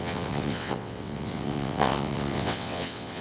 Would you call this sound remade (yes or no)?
yes